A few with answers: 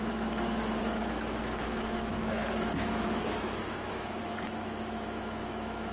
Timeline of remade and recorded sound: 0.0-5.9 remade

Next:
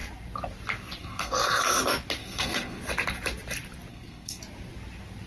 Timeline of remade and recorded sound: 0.0-1.0 recorded; 1.0-1.8 remade; 1.8-2.2 recorded; 2.2-2.8 remade; 2.8-3.9 recorded; 3.9-4.4 remade; 4.4-5.3 recorded